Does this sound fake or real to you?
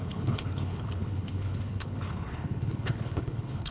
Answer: fake